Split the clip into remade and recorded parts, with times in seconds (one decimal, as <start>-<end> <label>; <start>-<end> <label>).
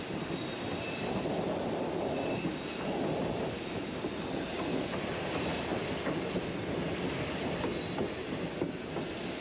0.0-9.4 recorded